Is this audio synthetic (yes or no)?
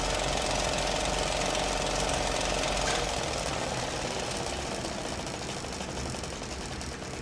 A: no